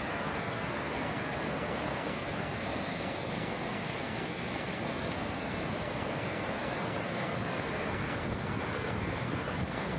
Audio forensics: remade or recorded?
remade